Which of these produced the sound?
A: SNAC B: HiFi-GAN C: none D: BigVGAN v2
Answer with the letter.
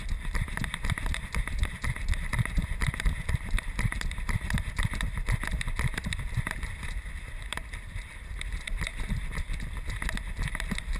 D